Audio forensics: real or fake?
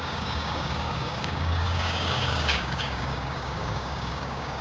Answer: fake